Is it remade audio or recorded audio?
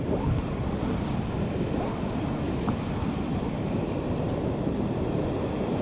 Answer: remade